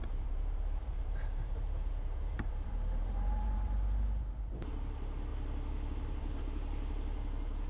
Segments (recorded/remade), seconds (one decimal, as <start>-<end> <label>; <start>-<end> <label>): 0.0-5.3 remade; 5.3-6.4 recorded; 6.4-7.7 remade